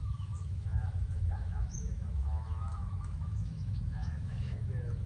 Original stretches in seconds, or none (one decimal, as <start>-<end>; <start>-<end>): none